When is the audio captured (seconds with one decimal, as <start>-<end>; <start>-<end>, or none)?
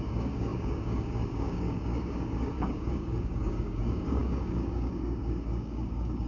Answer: none